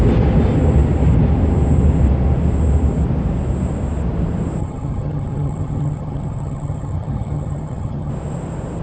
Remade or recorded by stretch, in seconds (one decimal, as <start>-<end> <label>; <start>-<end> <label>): 0.0-4.6 recorded; 4.6-8.1 remade; 8.1-8.8 recorded